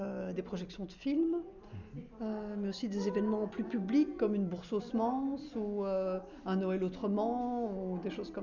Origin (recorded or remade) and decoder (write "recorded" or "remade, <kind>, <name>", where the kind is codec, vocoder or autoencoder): recorded